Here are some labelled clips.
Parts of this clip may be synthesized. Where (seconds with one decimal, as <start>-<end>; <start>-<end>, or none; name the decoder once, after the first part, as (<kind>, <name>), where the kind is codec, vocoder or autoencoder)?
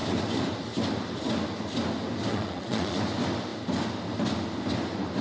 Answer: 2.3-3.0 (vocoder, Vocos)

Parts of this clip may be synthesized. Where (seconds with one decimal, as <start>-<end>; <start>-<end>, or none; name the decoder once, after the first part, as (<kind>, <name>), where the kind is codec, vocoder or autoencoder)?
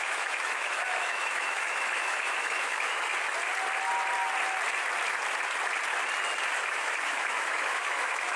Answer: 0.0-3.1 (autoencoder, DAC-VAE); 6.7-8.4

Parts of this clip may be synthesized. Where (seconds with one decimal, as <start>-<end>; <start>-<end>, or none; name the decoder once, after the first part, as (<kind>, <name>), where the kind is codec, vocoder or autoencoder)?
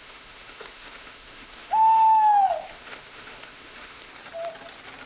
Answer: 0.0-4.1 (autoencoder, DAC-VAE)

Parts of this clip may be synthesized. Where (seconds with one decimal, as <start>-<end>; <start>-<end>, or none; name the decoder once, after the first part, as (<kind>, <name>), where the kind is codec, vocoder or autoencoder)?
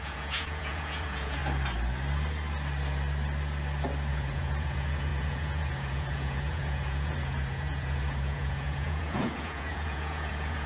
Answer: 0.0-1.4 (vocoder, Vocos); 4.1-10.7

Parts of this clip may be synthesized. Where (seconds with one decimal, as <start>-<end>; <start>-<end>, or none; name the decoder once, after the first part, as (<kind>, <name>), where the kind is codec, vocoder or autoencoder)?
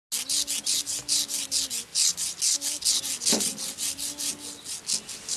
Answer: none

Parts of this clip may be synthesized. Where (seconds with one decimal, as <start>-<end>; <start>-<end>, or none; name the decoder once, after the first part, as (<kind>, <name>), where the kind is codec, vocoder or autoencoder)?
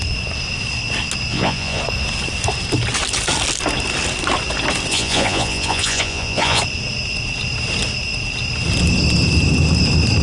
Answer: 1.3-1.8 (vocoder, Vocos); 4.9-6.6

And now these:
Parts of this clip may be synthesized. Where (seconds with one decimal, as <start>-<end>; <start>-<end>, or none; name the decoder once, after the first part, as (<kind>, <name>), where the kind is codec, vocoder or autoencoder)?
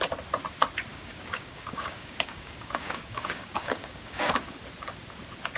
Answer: 0.9-4.3 (codec, DAC)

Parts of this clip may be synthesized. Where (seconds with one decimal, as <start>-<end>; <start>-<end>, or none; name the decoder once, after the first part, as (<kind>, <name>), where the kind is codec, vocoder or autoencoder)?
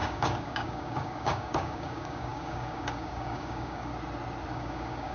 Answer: 0.0-3.9 (codec, DAC); 4.5-5.1